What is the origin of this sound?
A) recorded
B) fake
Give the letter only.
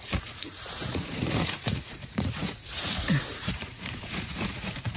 B